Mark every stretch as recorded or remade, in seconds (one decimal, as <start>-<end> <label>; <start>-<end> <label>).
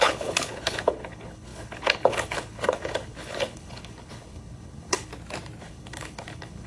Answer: 0.0-5.1 remade; 5.1-5.6 recorded; 5.6-6.7 remade